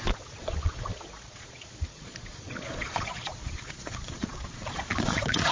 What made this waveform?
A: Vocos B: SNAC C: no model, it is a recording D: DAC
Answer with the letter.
A